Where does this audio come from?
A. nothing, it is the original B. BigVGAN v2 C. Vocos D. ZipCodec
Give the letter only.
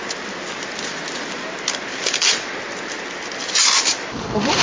A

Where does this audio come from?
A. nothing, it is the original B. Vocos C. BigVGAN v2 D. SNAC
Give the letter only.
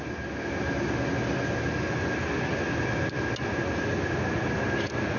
A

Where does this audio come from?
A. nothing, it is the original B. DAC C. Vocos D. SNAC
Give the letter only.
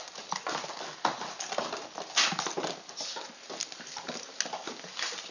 A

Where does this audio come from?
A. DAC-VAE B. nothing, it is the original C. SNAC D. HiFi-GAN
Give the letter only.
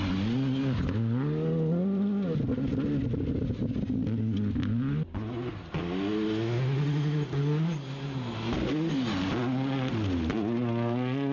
B